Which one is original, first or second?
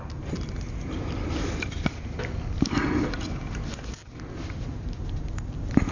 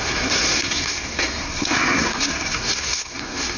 first